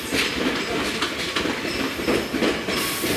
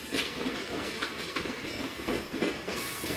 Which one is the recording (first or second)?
first